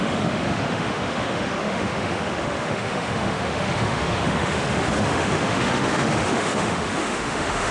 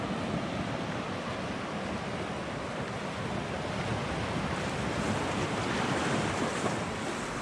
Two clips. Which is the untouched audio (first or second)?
second